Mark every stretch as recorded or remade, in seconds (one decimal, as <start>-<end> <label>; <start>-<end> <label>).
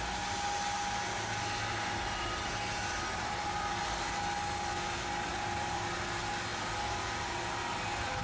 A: 0.0-8.2 recorded